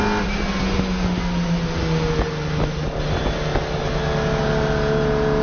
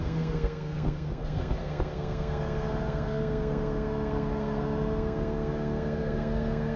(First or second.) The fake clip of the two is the second